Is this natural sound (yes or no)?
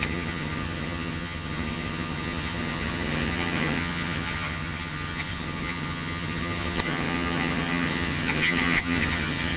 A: no